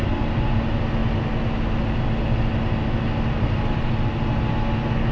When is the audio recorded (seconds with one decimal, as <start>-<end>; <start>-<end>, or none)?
0.0-5.1